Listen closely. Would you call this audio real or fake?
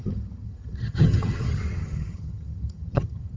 fake